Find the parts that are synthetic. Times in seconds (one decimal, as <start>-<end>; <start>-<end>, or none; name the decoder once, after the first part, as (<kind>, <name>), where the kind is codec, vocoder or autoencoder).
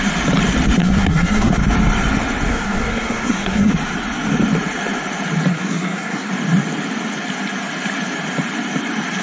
0.8-1.5 (codec, SNAC); 2.5-3.7; 5.5-6.3